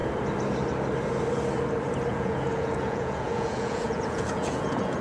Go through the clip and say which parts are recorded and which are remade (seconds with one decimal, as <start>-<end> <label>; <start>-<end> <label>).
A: 0.0-2.1 recorded; 2.1-5.0 remade